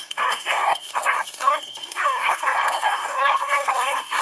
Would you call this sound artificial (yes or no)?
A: yes